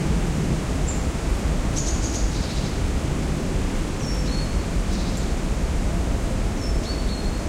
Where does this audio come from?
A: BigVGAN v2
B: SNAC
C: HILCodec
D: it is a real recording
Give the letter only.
A